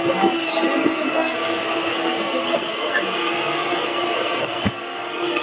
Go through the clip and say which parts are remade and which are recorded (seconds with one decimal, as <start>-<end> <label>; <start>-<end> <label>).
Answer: 0.0-5.4 remade